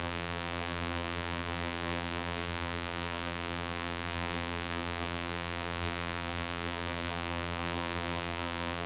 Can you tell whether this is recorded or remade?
remade